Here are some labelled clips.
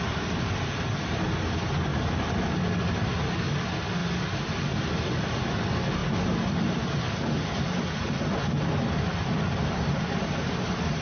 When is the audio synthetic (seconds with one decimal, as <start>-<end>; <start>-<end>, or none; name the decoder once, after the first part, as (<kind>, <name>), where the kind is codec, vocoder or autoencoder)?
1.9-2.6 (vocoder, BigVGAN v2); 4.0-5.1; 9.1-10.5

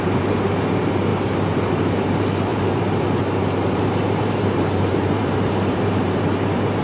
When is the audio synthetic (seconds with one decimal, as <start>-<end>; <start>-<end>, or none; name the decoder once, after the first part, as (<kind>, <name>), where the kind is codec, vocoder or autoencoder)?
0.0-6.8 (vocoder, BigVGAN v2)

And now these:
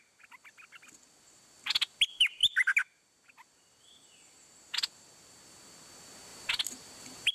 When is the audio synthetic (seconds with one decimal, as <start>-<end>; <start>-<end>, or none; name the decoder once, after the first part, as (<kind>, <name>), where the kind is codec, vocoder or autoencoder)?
6.3-7.3 (vocoder, BigVGAN v2)

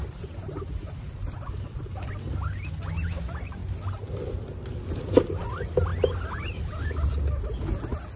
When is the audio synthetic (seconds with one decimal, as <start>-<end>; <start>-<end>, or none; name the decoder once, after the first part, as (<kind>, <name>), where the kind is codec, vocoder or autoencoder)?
0.0-0.6 (vocoder, BigVGAN v2); 5.9-6.8

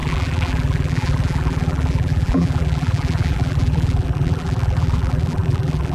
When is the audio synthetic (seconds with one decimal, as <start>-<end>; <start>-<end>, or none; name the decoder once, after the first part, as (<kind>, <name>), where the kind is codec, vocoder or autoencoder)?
0.0-5.9 (vocoder, BigVGAN v2)

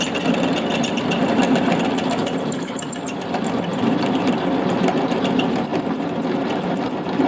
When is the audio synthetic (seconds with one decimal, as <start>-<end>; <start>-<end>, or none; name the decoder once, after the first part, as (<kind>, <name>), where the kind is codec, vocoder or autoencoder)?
2.2-3.2 (vocoder, BigVGAN v2); 3.7-4.3